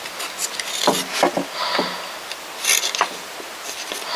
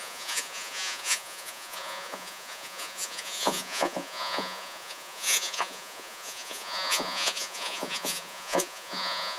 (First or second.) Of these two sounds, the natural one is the first